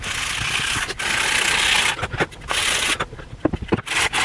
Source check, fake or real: real